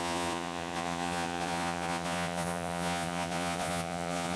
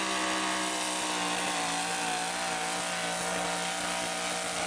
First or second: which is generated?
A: first